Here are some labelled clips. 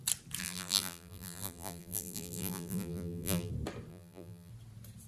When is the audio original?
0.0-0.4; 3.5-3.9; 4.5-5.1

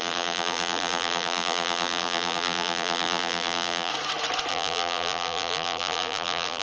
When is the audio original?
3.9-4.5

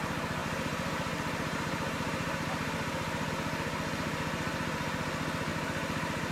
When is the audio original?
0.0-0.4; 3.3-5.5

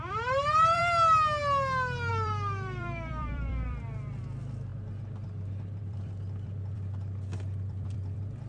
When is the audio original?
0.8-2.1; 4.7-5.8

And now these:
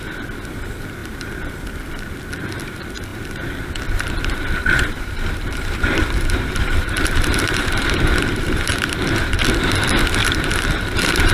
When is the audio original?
0.0-4.6; 9.2-10.2